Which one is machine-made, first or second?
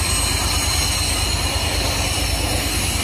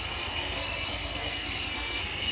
second